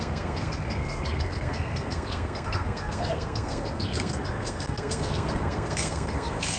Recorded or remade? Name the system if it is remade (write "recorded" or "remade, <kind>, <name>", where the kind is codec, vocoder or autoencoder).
remade, codec, SNAC